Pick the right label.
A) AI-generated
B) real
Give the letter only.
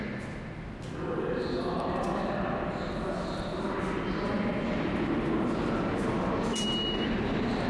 B